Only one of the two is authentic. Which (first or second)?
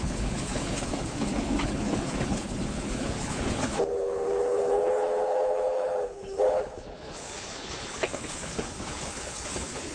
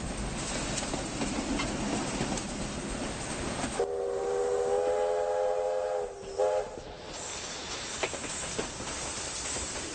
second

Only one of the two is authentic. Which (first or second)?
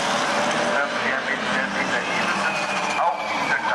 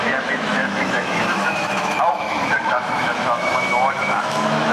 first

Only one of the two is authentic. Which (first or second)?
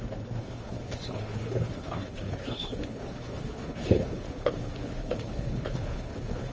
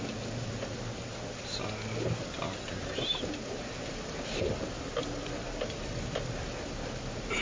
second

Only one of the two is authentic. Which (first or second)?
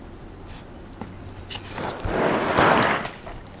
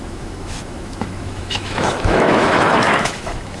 first